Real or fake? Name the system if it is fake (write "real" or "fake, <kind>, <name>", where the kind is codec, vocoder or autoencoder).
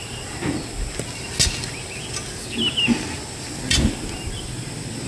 real